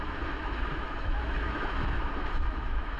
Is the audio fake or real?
fake